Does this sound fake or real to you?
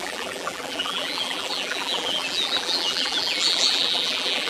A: fake